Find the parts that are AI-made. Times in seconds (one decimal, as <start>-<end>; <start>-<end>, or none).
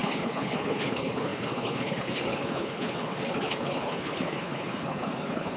0.0-5.6